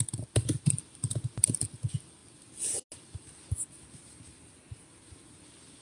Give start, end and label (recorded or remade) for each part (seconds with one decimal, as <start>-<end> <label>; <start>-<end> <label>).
0.0-5.8 recorded